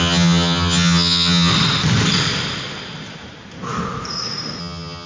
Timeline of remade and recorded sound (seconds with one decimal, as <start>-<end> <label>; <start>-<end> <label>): 0.0-1.5 remade; 1.5-4.6 recorded; 4.6-5.1 remade